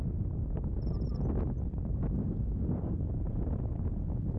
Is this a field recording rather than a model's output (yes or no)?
yes